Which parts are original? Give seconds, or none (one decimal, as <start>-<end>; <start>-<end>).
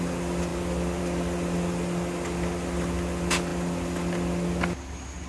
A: 0.0-5.3